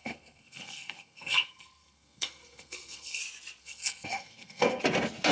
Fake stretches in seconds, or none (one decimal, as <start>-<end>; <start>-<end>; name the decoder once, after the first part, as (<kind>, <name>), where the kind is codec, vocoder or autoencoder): 0.0-3.2 (codec, SNAC); 3.6-4.8